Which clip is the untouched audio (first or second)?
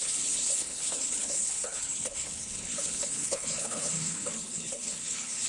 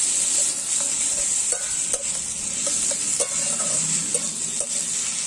second